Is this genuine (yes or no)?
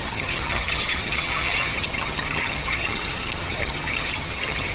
no